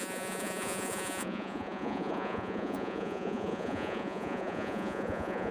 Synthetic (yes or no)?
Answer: yes